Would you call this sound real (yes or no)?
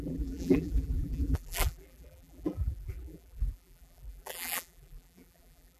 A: no